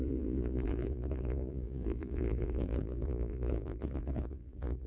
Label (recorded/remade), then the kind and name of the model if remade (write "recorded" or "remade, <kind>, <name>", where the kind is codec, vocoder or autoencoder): remade, vocoder, Vocos